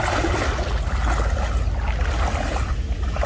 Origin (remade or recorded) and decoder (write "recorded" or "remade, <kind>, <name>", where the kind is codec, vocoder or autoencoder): recorded